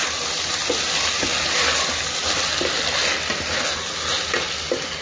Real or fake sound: real